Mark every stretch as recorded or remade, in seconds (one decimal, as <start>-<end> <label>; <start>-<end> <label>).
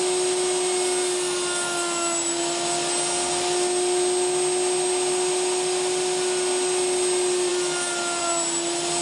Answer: 0.0-9.0 recorded